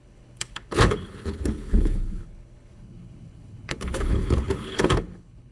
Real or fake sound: fake